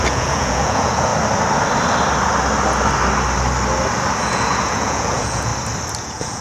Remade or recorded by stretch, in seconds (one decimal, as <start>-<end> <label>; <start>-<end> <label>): 0.0-1.1 remade; 1.1-4.2 recorded; 4.2-5.5 remade; 5.5-6.0 recorded; 6.0-6.4 remade